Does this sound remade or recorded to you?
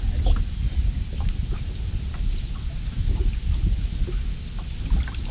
recorded